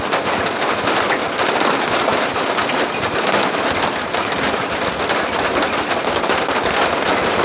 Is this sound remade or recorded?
remade